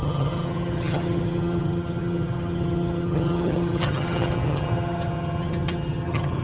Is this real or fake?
fake